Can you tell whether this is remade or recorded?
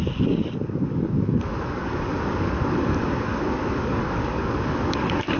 remade